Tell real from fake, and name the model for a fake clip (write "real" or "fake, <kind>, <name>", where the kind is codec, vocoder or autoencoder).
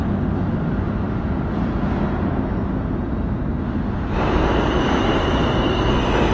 real